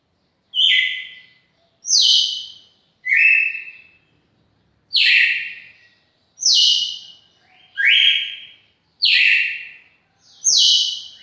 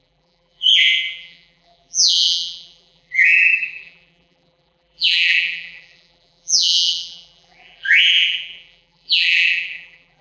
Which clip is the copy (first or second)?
second